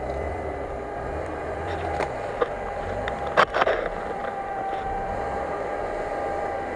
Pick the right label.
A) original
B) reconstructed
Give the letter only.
B